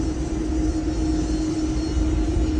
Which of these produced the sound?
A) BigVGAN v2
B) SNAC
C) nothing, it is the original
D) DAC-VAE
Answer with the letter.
C